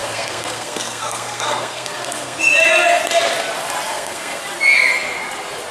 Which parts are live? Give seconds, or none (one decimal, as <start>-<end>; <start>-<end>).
2.4-3.9; 4.4-5.7